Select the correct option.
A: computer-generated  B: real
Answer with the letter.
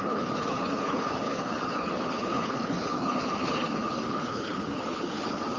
A